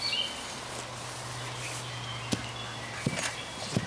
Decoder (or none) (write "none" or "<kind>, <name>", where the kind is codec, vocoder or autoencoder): none